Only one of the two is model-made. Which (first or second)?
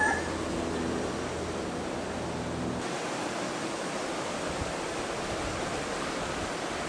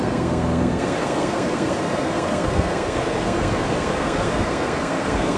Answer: second